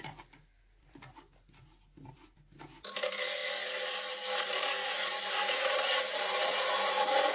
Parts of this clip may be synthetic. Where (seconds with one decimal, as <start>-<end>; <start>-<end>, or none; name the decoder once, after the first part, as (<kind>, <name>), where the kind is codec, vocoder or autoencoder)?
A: none